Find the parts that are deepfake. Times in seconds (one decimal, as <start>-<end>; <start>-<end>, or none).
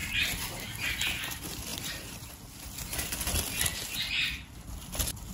0.0-0.9; 1.7-2.3